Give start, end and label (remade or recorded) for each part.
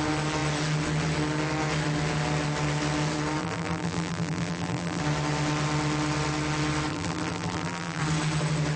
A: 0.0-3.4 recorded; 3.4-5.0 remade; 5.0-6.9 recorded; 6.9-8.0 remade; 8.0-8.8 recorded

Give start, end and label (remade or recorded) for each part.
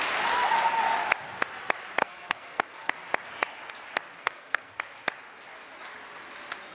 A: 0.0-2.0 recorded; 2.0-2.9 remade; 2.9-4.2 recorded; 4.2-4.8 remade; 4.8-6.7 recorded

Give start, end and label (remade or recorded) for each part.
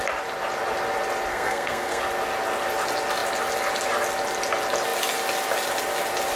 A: 0.0-1.3 recorded; 1.3-2.0 remade; 2.0-6.4 recorded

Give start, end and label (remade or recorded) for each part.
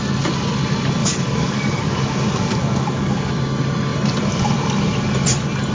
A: 0.0-1.0 recorded; 1.0-3.3 remade; 3.3-5.7 recorded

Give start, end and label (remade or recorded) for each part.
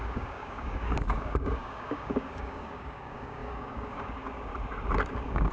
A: 0.0-4.5 remade; 4.5-5.1 recorded; 5.1-5.5 remade